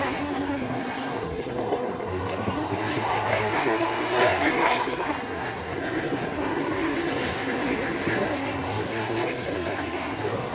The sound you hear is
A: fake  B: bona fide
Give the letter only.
A